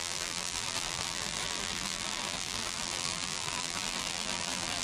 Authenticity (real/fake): fake